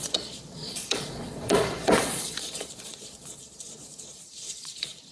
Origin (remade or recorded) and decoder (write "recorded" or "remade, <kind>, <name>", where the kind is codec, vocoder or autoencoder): remade, vocoder, Vocos